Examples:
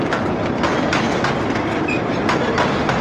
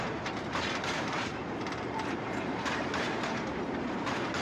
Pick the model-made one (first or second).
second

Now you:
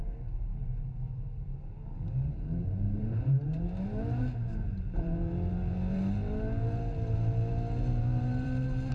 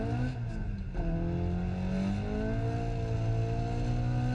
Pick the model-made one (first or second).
first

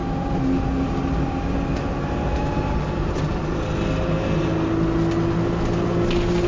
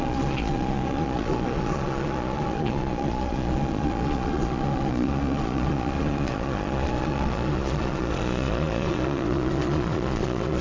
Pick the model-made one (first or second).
second